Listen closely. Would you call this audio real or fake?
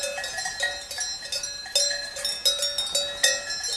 real